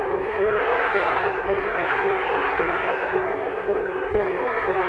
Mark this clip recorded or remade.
remade